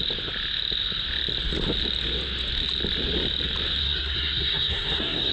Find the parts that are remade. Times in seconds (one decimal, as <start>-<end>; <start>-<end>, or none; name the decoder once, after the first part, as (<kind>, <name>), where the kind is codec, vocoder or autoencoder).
3.8-5.3 (codec, SNAC)